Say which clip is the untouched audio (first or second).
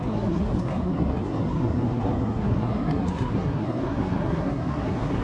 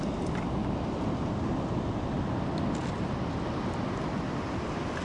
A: second